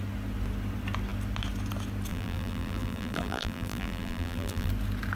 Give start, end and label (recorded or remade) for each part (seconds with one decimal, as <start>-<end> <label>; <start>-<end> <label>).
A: 0.0-2.1 recorded; 2.1-4.7 remade; 4.7-5.2 recorded